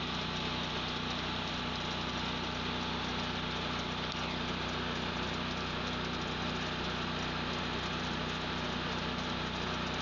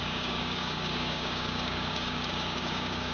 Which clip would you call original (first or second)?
first